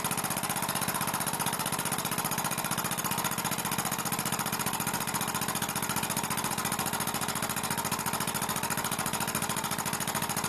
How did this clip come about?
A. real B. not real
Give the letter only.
A